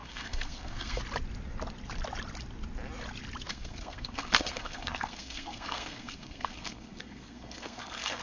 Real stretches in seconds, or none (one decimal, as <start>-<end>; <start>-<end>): 1.0-3.5

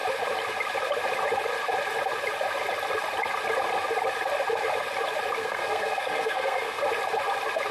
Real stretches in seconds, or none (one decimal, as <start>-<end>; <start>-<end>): 0.0-5.4; 6.8-7.7